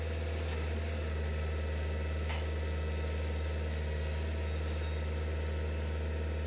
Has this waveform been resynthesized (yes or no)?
no